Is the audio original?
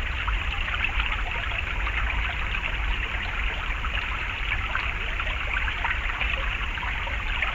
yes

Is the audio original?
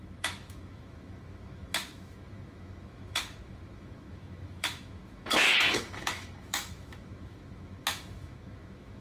no